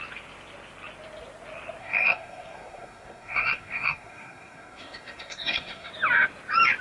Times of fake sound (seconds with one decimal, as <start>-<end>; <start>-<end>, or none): 1.8-5.9